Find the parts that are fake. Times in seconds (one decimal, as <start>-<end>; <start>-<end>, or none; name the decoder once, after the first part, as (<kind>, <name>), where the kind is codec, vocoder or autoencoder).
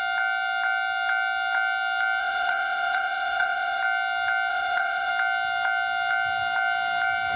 2.2-3.8 (vocoder, WaveNeXt); 4.5-5.1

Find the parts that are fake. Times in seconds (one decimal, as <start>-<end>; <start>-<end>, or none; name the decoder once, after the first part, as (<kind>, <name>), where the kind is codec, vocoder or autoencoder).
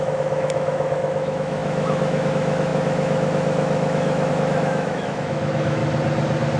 0.0-5.8 (autoencoder, DAC-VAE)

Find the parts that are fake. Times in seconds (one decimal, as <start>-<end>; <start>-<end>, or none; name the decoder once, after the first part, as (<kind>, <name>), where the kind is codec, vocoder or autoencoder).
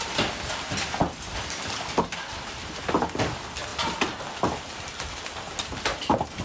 none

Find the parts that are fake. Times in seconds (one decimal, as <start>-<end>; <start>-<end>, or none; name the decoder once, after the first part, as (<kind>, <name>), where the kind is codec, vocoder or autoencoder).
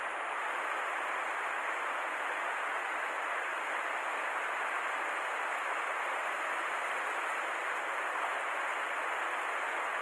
none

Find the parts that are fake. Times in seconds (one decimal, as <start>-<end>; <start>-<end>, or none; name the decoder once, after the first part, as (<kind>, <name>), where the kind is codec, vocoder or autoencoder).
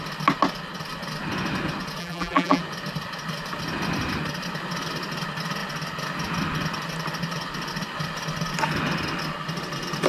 2.0-2.6 (vocoder, BigVGAN v2)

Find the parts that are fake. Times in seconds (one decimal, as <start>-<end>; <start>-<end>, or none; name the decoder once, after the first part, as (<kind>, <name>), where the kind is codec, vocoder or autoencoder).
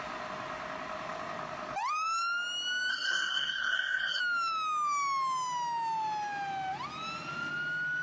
2.9-4.2 (codec, SNAC)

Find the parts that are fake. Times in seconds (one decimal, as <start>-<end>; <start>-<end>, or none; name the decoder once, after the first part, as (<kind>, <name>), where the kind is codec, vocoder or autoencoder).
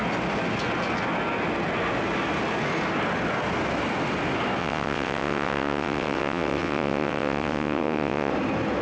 4.6-8.3 (vocoder, WaveNeXt)